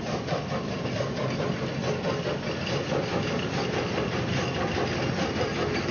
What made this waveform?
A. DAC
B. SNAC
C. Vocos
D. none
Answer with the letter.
D